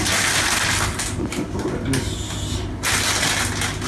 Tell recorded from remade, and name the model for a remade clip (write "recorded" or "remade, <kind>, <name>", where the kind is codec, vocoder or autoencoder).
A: recorded